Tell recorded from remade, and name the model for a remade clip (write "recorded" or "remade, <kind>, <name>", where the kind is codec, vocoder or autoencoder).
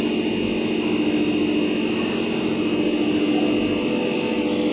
recorded